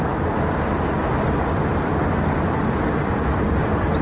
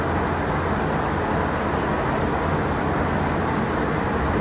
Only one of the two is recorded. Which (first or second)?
second